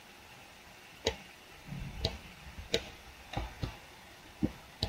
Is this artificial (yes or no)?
no